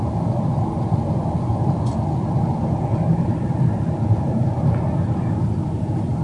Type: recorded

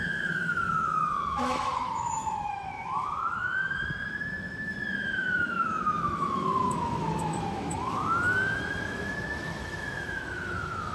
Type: remade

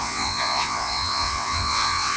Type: remade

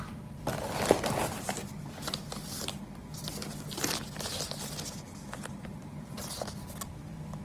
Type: recorded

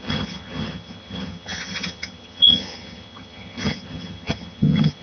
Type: remade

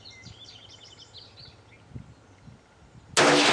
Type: recorded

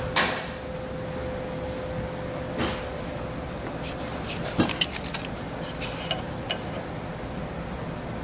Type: recorded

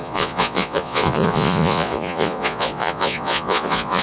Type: remade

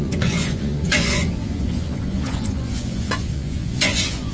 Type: remade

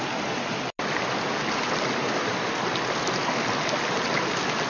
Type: recorded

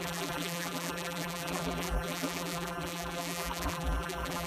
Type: remade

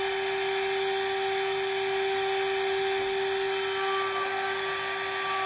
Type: recorded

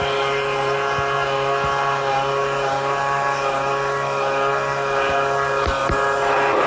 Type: recorded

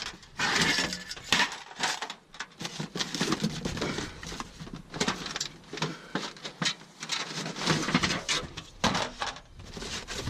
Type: recorded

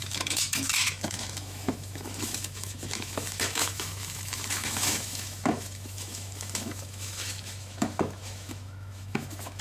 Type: remade